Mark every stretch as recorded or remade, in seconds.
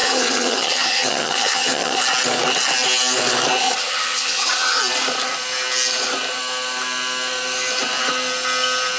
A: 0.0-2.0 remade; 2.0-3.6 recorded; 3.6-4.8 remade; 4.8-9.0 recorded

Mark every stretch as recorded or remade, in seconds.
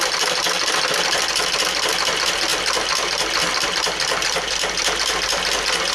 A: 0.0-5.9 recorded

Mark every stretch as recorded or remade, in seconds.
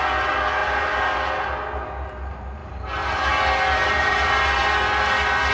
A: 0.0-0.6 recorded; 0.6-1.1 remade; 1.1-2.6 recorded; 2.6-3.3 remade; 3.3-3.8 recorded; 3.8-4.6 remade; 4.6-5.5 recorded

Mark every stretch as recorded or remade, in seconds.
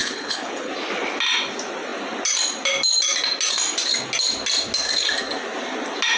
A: 0.0-0.7 remade; 0.7-6.2 recorded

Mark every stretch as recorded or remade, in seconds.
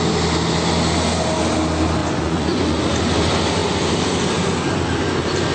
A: 0.0-2.0 recorded; 2.0-2.8 remade; 2.8-5.5 recorded